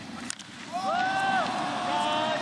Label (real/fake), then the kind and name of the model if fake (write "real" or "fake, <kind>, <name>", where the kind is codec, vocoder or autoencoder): real